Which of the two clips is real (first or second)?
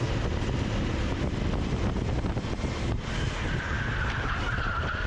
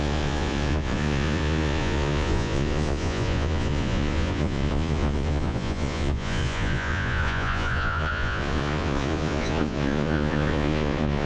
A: first